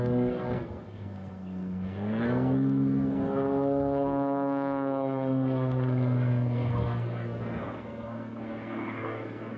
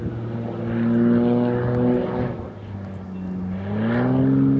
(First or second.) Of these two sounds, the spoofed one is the first